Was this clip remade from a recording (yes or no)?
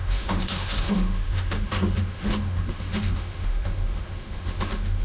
yes